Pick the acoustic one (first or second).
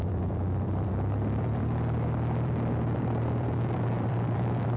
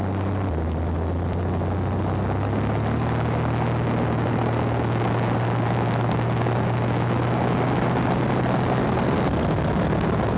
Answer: second